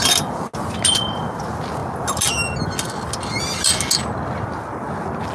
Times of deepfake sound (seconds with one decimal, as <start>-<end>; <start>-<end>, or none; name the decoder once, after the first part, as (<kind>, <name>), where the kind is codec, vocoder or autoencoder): none